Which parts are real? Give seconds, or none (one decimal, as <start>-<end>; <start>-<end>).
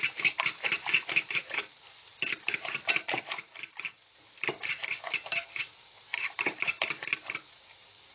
0.6-1.3; 2.1-2.6; 3.5-7.5